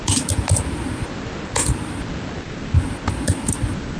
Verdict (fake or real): real